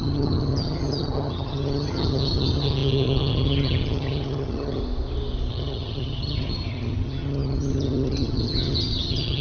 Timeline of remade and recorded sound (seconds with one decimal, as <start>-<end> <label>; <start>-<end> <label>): 0.0-4.8 remade; 4.8-5.5 recorded; 5.5-9.4 remade